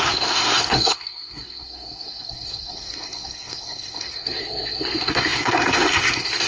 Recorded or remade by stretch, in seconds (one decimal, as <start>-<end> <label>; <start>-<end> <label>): 0.0-6.5 remade